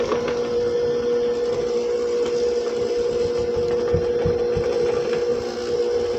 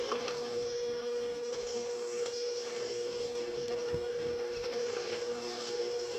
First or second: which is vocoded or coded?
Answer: second